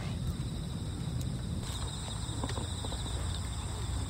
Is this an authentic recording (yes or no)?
yes